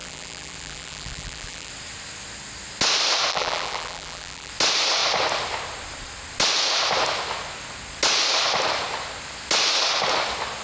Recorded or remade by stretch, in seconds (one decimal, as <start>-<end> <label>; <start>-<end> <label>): 0.0-1.7 remade; 1.7-3.3 recorded; 3.3-4.5 remade; 4.5-10.6 recorded